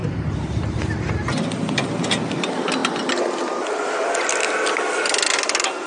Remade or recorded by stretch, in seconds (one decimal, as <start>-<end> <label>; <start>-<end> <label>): 0.0-1.1 remade; 1.1-5.9 recorded